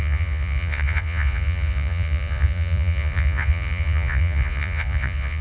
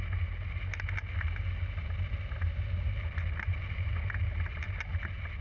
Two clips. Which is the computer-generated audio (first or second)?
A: first